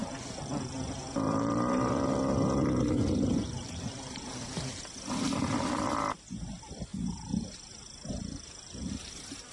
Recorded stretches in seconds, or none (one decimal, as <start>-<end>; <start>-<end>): 4.9-6.9